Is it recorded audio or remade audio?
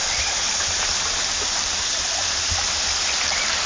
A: recorded